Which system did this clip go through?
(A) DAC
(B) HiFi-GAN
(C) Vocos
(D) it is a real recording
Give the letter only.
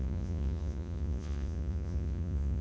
C